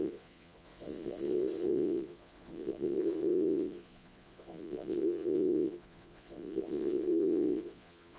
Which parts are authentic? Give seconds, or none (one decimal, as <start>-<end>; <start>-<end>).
none